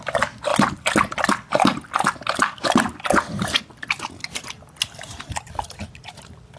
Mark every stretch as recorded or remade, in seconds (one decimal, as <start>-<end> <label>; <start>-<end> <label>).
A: 0.0-6.6 recorded